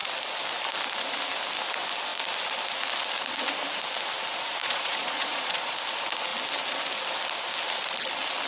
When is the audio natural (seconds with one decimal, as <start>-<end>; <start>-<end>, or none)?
0.0-4.6; 5.8-8.5